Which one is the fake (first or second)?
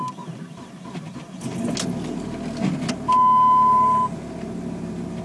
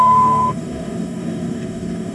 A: second